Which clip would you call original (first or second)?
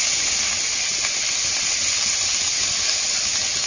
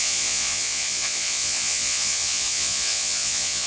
first